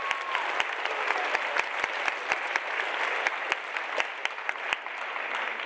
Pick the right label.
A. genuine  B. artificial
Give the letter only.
A